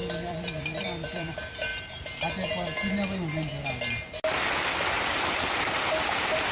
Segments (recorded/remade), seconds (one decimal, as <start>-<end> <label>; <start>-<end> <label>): 0.0-1.7 remade; 1.7-5.2 recorded; 5.2-6.5 remade